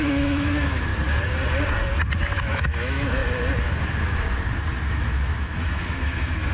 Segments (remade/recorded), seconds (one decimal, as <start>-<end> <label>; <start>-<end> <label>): 0.0-0.9 remade; 0.9-2.4 recorded; 2.4-3.2 remade; 3.2-4.9 recorded; 4.9-6.5 remade